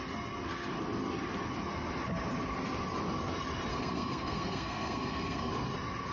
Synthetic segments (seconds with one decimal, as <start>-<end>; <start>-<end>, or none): 3.7-5.5